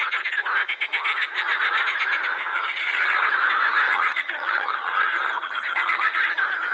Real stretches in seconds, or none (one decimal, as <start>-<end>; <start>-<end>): 0.0-2.5; 3.3-3.7; 6.3-6.7